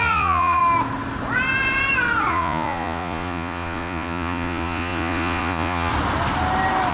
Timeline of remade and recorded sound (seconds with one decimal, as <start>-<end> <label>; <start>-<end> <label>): 0.0-0.6 remade; 0.6-2.3 recorded; 2.3-5.9 remade; 5.9-6.9 recorded